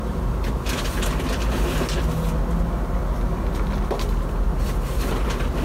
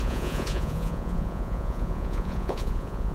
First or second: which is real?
first